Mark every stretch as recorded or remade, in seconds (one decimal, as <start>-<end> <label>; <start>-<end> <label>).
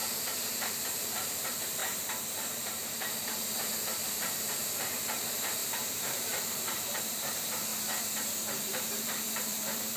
0.0-1.8 remade; 1.8-2.3 recorded; 2.3-7.7 remade; 7.7-8.6 recorded; 8.6-10.0 remade